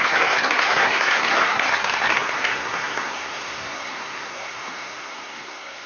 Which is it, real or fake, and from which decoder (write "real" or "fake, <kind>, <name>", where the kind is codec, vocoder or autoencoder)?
fake, codec, SNAC